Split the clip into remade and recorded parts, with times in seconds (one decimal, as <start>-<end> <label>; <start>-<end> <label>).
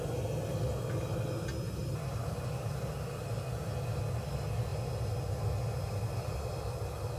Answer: 0.0-1.8 recorded; 1.8-2.7 remade; 2.7-7.2 recorded